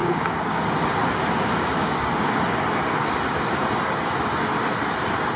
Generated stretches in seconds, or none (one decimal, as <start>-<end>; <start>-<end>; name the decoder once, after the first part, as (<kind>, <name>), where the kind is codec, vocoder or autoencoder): 0.0-0.6 (codec, DAC); 1.8-2.4

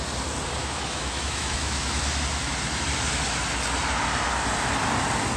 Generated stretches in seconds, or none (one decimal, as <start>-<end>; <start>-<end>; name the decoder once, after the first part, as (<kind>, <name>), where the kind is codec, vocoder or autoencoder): 0.6-2.0 (autoencoder, DAC-VAE)